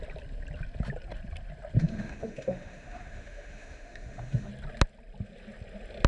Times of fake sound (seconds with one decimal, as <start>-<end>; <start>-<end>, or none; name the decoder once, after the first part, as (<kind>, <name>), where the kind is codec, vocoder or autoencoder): 1.8-4.5 (autoencoder, DAC-VAE)